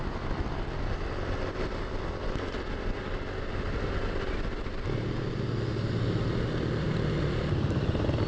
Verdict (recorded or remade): recorded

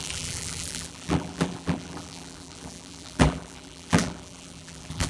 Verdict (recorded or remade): remade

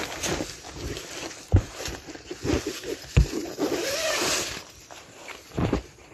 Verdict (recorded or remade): recorded